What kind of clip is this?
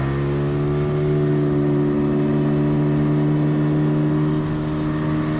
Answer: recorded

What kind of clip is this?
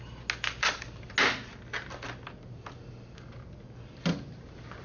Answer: recorded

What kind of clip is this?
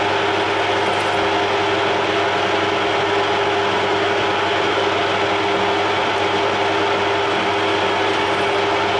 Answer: recorded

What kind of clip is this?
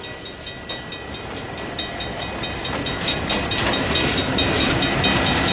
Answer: recorded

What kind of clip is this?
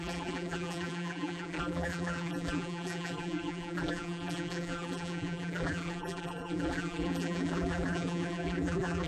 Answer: remade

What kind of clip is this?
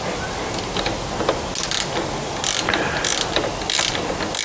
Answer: recorded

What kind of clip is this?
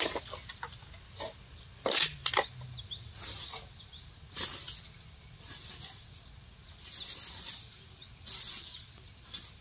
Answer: recorded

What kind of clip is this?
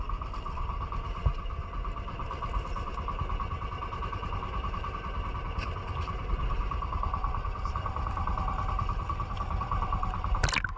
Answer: recorded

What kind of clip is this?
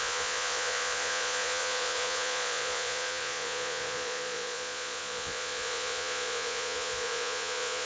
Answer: remade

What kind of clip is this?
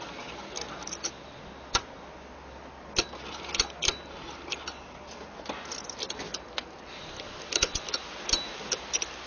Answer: recorded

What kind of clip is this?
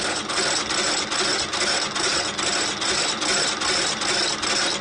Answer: recorded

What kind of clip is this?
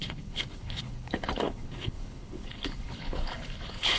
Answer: remade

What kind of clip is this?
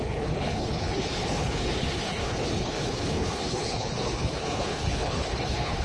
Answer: remade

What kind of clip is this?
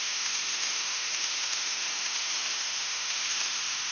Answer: remade